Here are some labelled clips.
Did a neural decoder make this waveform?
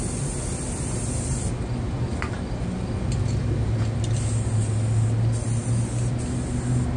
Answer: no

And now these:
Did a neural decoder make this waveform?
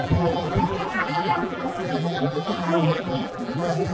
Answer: yes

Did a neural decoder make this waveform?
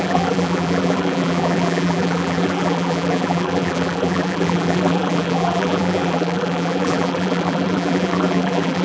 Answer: yes